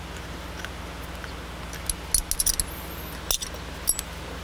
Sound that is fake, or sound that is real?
real